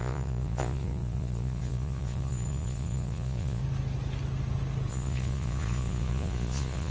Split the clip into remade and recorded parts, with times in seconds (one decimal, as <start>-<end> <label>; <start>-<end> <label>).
0.0-3.6 remade; 3.6-4.9 recorded; 4.9-6.9 remade

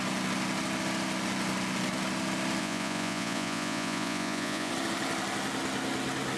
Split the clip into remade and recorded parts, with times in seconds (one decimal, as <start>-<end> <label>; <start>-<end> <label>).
0.0-2.6 recorded; 2.6-4.7 remade; 4.7-6.4 recorded

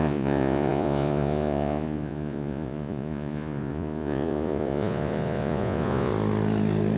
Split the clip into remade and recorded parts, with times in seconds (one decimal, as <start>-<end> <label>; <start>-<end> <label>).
0.0-6.1 remade; 6.1-7.0 recorded

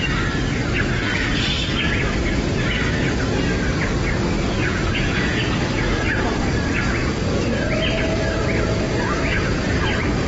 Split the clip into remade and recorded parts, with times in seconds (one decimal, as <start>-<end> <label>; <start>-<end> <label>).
0.0-4.6 recorded; 4.6-7.4 remade; 7.4-9.3 recorded; 9.3-9.8 remade; 9.8-10.3 recorded

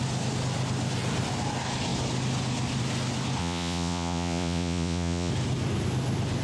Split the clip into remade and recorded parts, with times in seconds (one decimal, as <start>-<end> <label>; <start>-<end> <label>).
0.0-3.4 recorded; 3.4-5.3 remade; 5.3-6.4 recorded

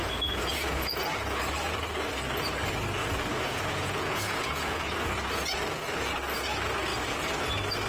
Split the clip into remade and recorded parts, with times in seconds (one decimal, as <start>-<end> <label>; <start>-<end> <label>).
0.0-0.9 remade; 0.9-3.0 recorded; 3.0-5.1 remade; 5.1-7.9 recorded